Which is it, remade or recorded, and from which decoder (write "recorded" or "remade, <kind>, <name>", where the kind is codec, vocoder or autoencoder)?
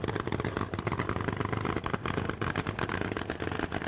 recorded